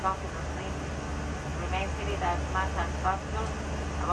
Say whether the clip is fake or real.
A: real